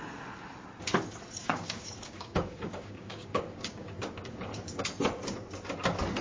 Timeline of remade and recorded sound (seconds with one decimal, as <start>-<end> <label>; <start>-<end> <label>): 0.0-1.4 recorded; 1.4-4.8 remade; 4.8-6.2 recorded